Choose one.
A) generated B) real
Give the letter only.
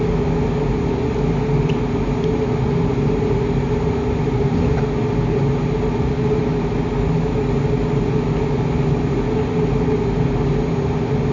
B